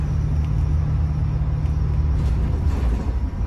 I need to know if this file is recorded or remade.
recorded